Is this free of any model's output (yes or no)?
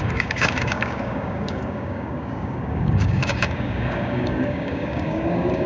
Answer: no